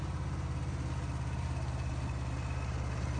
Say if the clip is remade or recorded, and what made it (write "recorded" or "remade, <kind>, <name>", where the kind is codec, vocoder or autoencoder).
recorded